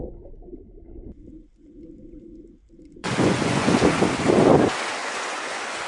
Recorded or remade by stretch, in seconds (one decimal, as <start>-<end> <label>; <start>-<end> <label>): 0.0-3.0 recorded; 3.0-3.9 remade; 3.9-5.0 recorded; 5.0-5.9 remade